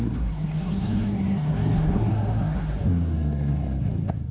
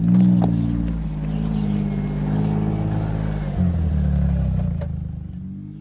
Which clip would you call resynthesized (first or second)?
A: first